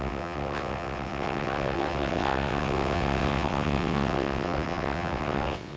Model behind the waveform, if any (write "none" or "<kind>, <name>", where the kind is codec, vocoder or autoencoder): vocoder, WaveNeXt